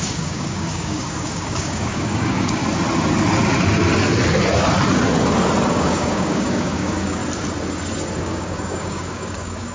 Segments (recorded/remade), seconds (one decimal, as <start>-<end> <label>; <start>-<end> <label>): 0.0-2.6 remade; 2.6-5.7 recorded; 5.7-7.2 remade; 7.2-8.2 recorded; 8.2-9.7 remade